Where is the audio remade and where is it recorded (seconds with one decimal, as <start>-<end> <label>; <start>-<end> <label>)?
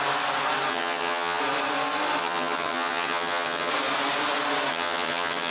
0.0-0.7 recorded; 0.7-1.4 remade; 1.4-2.2 recorded; 2.2-3.7 remade; 3.7-4.7 recorded; 4.7-5.5 remade